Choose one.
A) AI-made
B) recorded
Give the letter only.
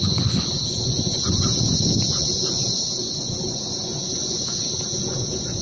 A